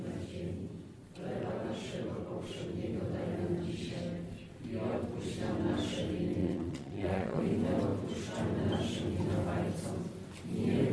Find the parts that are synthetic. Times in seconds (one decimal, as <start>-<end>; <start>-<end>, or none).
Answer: 6.4-7.4